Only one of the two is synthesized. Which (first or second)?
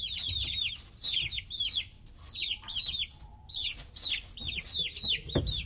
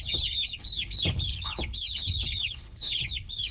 second